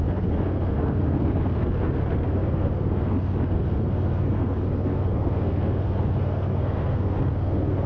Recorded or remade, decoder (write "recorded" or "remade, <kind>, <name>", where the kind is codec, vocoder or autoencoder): remade, codec, SNAC